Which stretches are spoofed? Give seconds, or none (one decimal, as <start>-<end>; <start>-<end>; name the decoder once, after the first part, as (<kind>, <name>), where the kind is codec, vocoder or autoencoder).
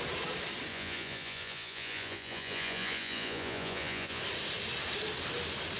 0.7-4.2 (vocoder, Vocos)